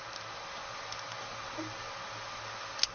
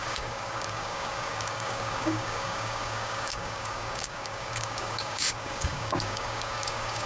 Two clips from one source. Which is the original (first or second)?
first